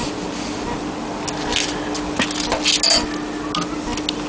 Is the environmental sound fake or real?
real